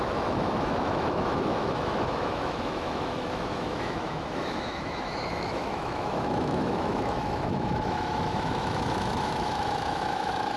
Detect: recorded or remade remade